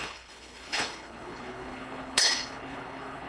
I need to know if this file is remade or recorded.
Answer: remade